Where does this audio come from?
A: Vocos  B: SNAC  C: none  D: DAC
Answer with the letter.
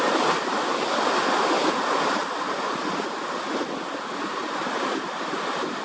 C